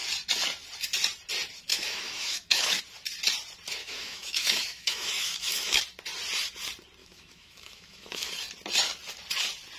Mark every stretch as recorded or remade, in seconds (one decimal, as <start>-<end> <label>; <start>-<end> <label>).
0.0-1.7 recorded; 1.7-2.8 remade; 2.8-3.8 recorded; 3.8-5.8 remade; 5.8-7.0 recorded; 7.0-8.3 remade; 8.3-9.8 recorded